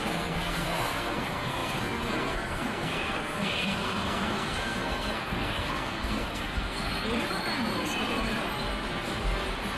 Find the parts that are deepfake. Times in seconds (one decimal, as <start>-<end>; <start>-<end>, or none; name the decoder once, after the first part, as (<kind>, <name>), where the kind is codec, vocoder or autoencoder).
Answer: 0.0-6.9 (codec, SNAC)